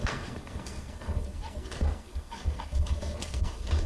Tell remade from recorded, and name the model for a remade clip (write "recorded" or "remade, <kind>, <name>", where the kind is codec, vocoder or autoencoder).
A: remade, codec, SNAC